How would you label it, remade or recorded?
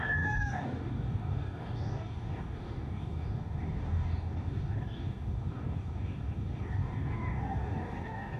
remade